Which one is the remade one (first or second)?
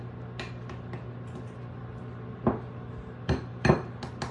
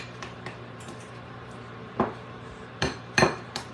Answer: second